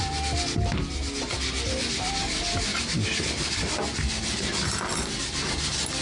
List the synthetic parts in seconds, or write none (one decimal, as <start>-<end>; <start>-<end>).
none